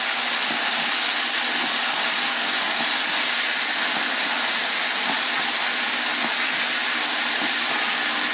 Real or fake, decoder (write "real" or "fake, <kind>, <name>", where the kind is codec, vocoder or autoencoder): real